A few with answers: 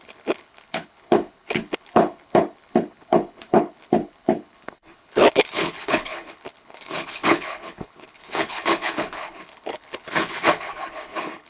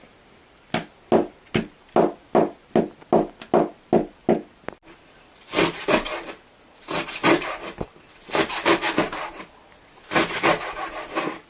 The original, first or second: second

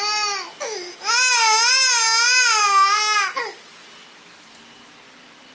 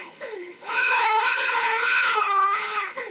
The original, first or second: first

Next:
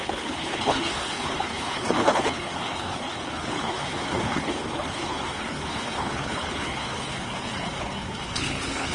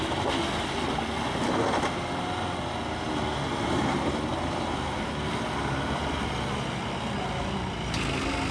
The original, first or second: second